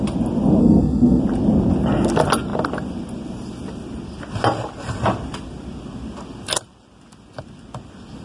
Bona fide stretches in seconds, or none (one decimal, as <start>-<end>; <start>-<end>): 0.0-0.6; 1.2-8.2